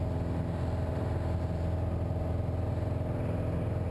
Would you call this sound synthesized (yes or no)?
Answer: no